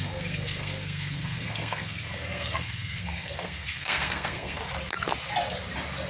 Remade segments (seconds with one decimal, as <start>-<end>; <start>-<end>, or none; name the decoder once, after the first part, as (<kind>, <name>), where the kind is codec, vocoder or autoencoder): 0.0-4.6 (codec, SNAC)